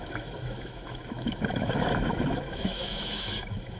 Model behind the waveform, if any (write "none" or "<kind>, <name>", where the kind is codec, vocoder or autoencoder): autoencoder, DAC-VAE